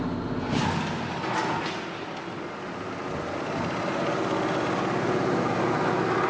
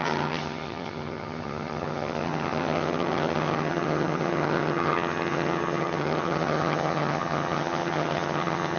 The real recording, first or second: first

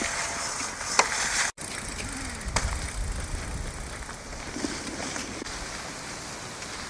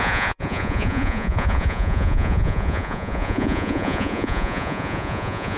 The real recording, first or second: first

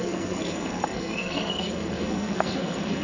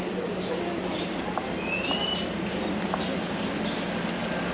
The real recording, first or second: second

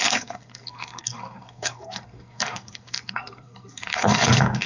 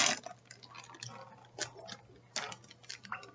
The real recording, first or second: second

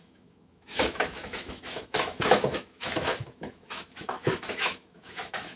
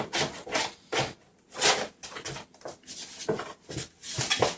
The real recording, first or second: second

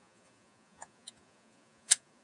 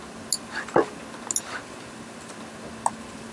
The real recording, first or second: second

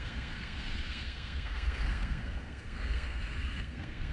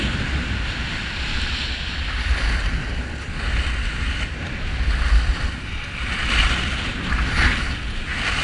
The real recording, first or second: second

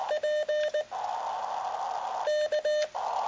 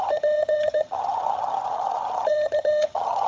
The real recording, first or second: first